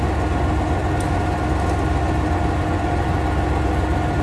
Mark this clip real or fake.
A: real